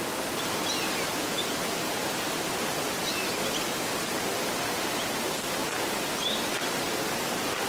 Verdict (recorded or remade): recorded